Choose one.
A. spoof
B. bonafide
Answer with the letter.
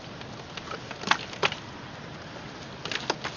B